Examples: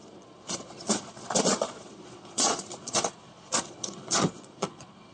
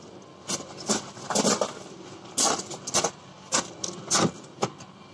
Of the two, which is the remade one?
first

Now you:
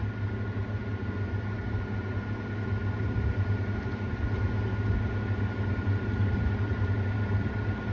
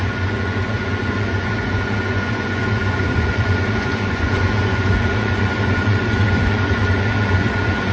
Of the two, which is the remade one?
second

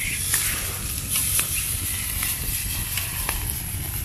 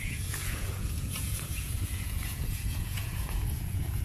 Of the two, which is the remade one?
second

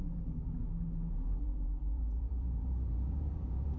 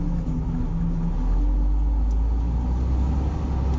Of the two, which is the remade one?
first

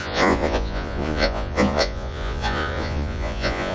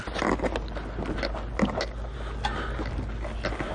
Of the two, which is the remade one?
first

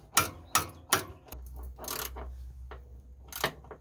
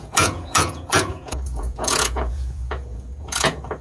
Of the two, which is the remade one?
second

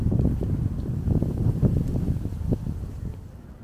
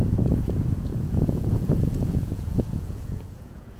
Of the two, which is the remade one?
second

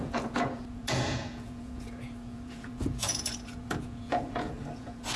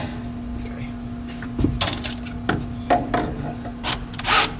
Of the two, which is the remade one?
first